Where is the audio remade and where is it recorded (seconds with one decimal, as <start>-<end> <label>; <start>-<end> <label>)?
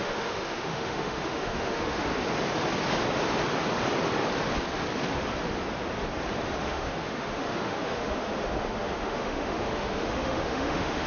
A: 0.0-2.1 remade; 2.1-6.6 recorded; 6.6-11.1 remade